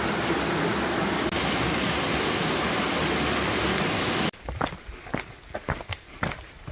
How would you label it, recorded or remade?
recorded